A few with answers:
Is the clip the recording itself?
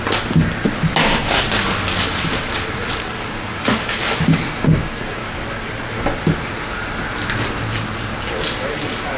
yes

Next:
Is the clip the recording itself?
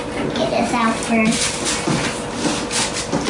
yes